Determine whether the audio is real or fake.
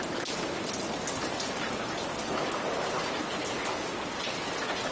real